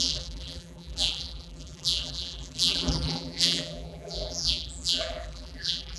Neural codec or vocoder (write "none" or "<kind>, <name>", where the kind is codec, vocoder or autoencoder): vocoder, BigVGAN v2